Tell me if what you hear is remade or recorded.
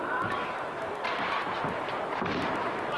recorded